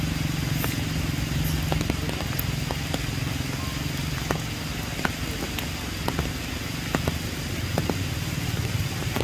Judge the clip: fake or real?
real